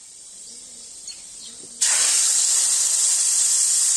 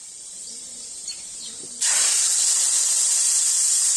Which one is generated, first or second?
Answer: second